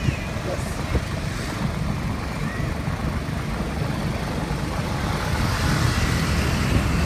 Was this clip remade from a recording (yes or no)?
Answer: no